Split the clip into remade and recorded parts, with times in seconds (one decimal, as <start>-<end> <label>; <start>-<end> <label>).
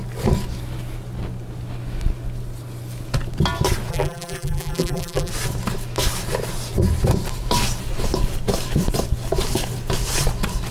0.0-3.9 recorded; 3.9-5.3 remade; 5.3-10.7 recorded